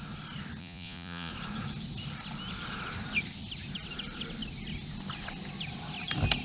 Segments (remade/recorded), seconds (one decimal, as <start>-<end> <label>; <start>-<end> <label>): 0.0-0.6 recorded; 0.6-1.3 remade; 1.3-6.4 recorded